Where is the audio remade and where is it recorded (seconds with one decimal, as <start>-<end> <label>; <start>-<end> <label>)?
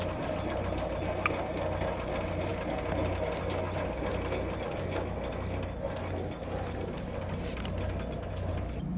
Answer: 0.0-9.0 recorded